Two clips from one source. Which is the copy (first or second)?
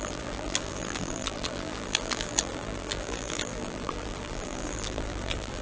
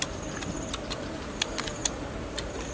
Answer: first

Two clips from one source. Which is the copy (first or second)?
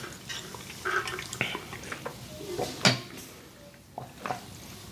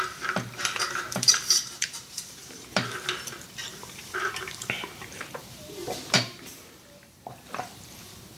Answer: second